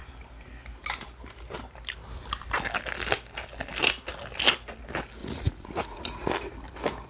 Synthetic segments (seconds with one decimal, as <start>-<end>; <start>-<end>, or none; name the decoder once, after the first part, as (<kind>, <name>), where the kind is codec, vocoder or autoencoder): 5.2-6.3 (vocoder, Vocos)